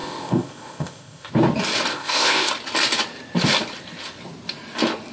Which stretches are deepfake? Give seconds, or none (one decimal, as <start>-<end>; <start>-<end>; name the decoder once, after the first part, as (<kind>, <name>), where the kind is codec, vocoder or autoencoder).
0.0-1.3 (codec, ZipCodec); 1.9-2.5

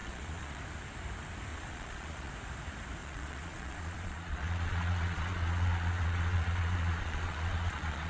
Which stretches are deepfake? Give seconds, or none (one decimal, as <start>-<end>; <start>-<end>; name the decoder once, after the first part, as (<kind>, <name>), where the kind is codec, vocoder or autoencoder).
0.0-0.6 (vocoder, Vocos); 1.5-2.3; 3.0-8.1

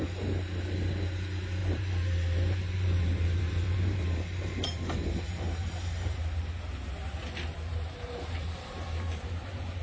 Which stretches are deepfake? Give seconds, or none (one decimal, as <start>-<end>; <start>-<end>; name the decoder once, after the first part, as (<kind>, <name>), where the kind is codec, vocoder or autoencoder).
1.6-6.2 (vocoder, BigVGAN v2); 7.7-9.8

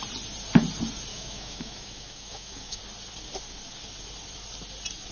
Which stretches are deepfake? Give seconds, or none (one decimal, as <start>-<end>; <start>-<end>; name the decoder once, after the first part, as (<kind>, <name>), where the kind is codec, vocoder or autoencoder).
1.1-2.8 (autoencoder, DAC-VAE)